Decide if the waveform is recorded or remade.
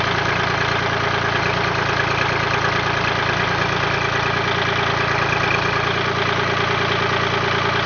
recorded